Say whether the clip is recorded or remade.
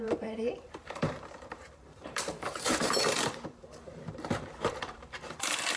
remade